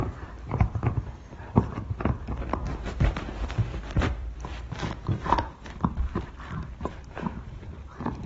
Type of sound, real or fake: fake